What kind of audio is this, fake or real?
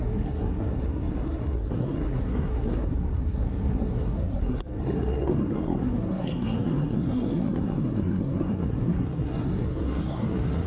fake